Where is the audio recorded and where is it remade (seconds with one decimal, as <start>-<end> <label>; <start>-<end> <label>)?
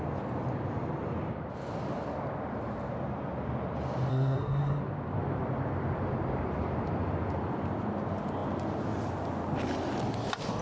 0.0-4.1 recorded; 4.1-4.8 remade; 4.8-10.6 recorded